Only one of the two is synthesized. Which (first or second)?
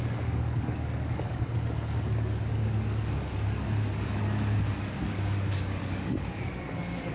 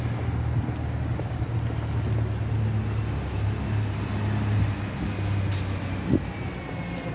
first